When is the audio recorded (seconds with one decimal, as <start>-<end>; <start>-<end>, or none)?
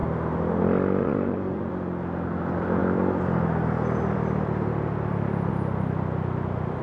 0.0-1.0; 1.7-6.8